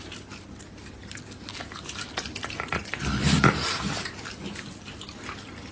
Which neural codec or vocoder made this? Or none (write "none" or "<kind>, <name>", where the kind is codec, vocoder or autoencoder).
none